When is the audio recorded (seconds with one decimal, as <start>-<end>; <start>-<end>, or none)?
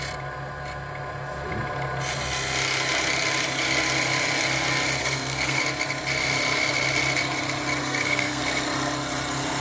0.0-5.0; 5.6-7.8; 8.4-9.6